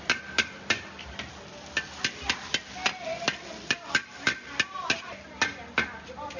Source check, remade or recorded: recorded